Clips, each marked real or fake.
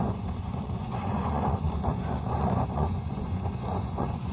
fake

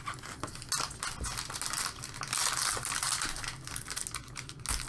real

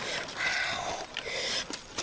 real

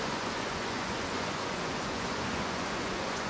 fake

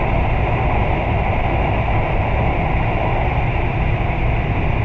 real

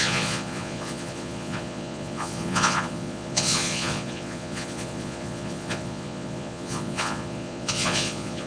fake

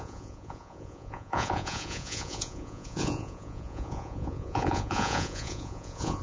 fake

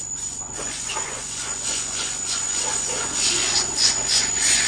fake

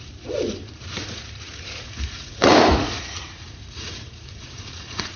fake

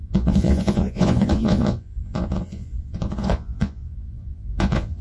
fake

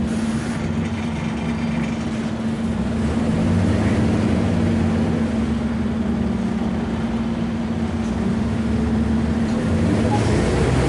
real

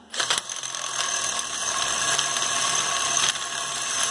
real